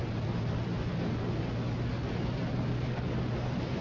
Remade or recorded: recorded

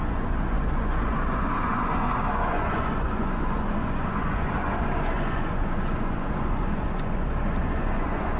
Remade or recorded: remade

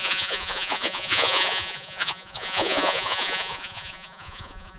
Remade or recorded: remade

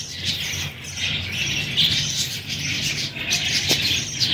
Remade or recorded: recorded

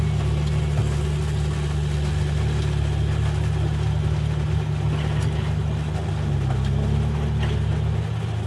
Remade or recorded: recorded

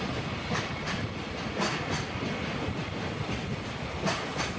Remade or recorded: recorded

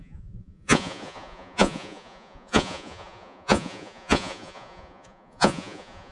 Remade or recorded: remade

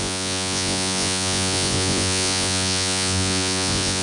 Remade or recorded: remade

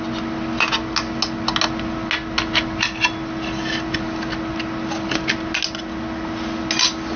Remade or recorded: recorded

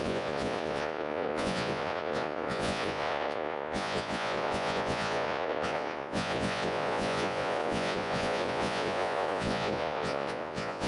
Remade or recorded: remade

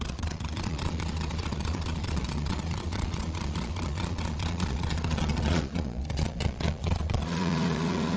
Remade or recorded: remade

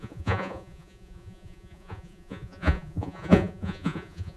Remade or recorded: remade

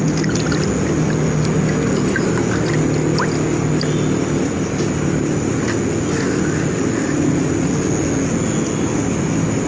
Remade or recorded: recorded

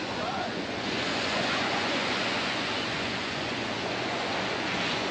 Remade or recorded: remade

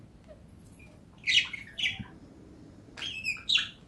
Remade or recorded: recorded